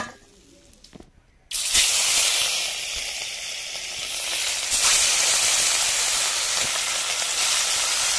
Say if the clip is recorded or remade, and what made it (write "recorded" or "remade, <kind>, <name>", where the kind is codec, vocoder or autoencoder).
recorded